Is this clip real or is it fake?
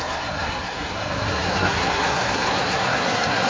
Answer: fake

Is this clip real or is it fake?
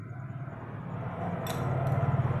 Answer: real